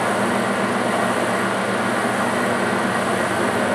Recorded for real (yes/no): yes